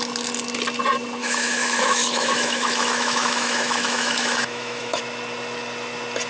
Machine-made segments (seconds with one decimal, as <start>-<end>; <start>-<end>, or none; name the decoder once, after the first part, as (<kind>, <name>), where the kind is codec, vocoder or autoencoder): 1.2-5.0 (autoencoder, DAC-VAE)